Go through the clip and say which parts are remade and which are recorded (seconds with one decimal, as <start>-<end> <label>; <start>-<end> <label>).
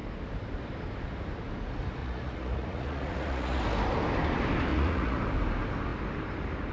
0.0-2.0 recorded; 2.0-3.6 remade; 3.6-4.7 recorded; 4.7-5.2 remade; 5.2-6.7 recorded